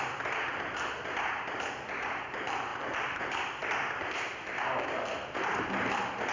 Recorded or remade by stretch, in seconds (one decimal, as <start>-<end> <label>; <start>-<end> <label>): 0.0-6.3 recorded